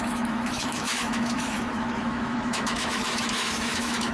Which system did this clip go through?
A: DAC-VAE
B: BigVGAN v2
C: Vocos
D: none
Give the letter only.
A